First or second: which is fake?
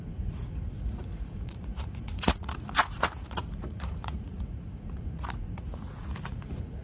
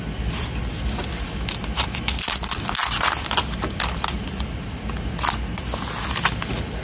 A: first